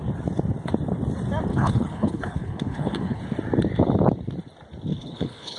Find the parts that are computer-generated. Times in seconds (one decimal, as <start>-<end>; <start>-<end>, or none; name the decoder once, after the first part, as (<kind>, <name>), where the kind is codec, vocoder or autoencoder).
1.5-3.2 (codec, HILCodec); 4.9-5.6